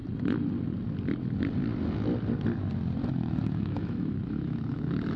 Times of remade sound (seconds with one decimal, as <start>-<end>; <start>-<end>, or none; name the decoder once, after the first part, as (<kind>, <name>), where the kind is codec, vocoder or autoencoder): 3.1-5.2 (autoencoder, DAC-VAE)